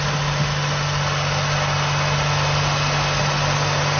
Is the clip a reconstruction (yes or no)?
no